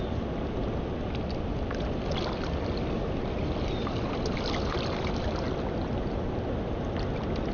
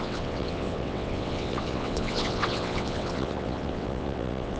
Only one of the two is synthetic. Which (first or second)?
second